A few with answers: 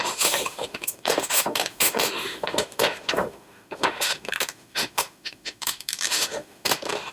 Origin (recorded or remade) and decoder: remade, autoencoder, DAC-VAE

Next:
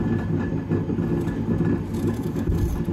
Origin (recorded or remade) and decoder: recorded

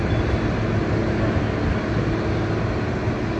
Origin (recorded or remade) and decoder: recorded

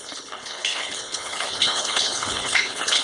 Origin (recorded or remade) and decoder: remade, codec, HILCodec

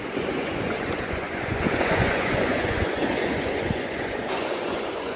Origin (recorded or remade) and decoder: remade, vocoder, Vocos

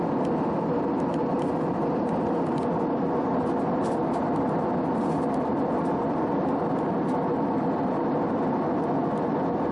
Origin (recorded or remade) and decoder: recorded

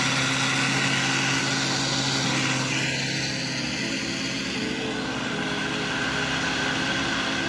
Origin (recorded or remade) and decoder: recorded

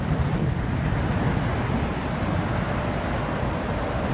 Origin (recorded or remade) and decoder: recorded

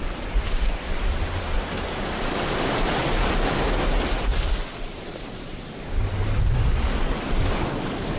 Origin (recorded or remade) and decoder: recorded